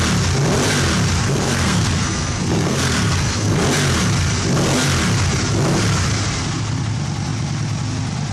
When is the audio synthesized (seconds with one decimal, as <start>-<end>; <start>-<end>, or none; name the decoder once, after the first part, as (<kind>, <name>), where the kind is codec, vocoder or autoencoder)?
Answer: 1.2-3.6 (codec, SNAC)